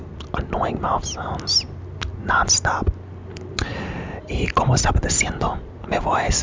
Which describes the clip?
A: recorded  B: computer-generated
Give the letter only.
A